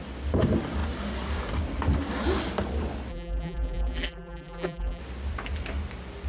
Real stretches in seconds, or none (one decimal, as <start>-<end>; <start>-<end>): 0.0-3.1; 5.0-6.3